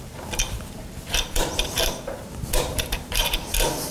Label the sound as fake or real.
fake